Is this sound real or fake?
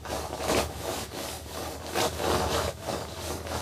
fake